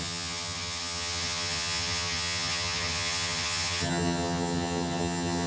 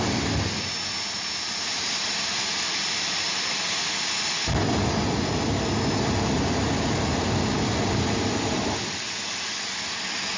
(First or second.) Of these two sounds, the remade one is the first